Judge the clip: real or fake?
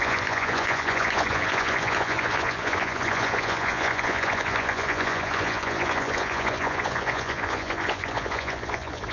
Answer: fake